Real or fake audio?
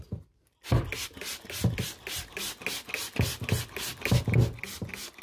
real